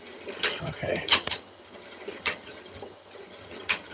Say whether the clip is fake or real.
fake